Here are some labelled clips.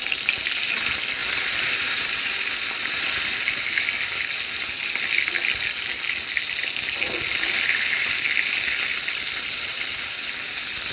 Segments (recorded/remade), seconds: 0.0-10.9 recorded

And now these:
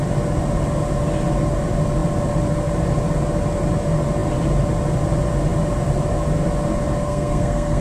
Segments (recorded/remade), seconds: 0.0-7.0 recorded; 7.0-7.8 remade

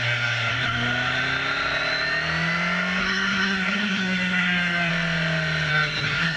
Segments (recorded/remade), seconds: 0.0-0.5 remade; 0.5-3.0 recorded; 3.0-4.9 remade; 4.9-5.7 recorded; 5.7-6.4 remade

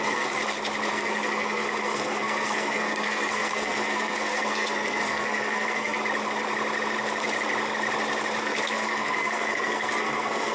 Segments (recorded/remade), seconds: 0.0-0.4 remade; 0.4-0.9 recorded; 0.9-6.0 remade; 6.0-8.4 recorded; 8.4-10.5 remade

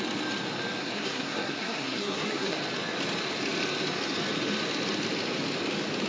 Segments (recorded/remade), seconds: 0.0-0.8 recorded; 0.8-2.6 remade; 2.6-6.1 recorded